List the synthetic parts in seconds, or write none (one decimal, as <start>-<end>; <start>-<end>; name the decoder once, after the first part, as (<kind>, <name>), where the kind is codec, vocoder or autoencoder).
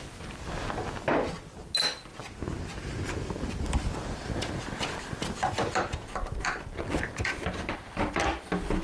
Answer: none